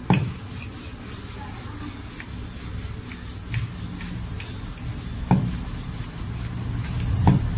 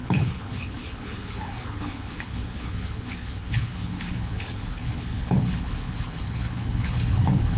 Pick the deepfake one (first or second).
second